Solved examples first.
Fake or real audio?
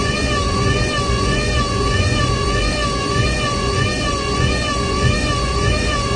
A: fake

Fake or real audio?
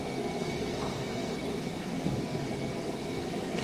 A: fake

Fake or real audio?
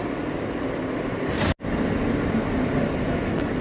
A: real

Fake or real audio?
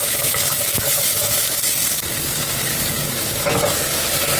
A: fake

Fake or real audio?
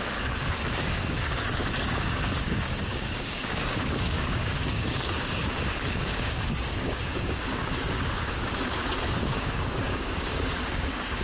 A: fake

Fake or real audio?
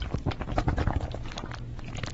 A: real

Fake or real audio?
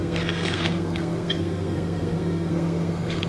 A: fake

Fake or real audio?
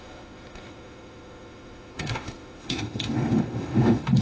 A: fake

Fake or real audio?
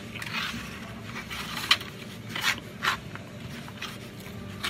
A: real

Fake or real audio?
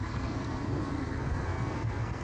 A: fake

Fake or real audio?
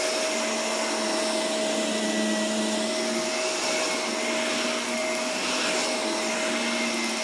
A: real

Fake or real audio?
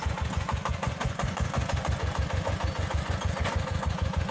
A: fake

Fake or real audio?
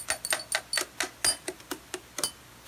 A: real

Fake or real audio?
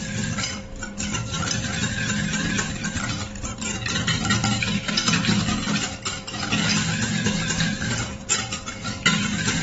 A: fake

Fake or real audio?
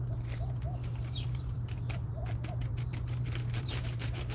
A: fake